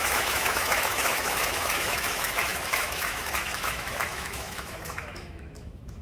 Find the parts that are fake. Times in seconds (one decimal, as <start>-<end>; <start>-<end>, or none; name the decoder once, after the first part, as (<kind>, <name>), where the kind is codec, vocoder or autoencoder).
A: 0.0-6.0 (autoencoder, DAC-VAE)